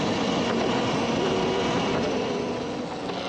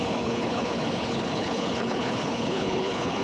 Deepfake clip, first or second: second